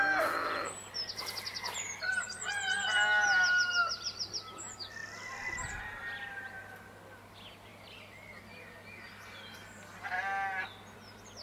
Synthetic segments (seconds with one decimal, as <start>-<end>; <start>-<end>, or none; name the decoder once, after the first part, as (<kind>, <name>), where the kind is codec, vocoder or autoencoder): 3.8-4.5 (vocoder, BigVGAN v2); 5.0-5.8; 7.7-8.4

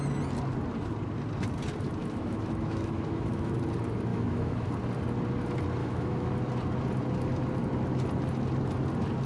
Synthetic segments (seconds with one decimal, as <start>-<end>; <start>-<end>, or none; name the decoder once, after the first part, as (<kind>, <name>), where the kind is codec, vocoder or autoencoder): 2.0-3.6 (autoencoder, DAC-VAE); 4.1-4.7; 5.8-6.3